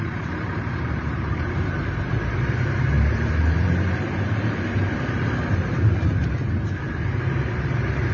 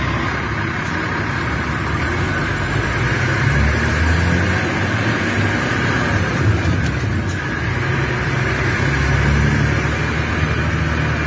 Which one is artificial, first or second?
first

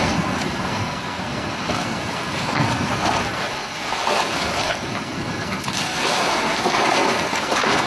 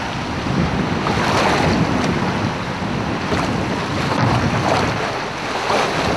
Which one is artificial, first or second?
first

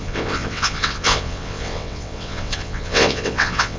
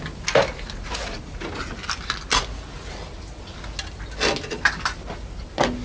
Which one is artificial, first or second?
first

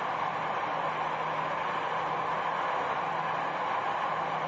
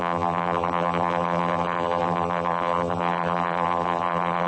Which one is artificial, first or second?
second